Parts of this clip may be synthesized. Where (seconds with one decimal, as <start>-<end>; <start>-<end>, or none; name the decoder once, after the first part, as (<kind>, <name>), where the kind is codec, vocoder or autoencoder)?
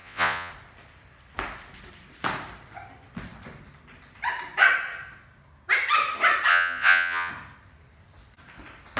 0.0-0.5 (vocoder, Vocos); 6.5-7.3